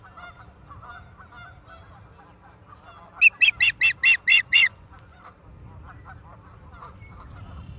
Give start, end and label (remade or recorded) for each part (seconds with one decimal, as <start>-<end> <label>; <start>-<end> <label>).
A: 0.0-4.3 recorded; 4.3-5.2 remade; 5.2-7.8 recorded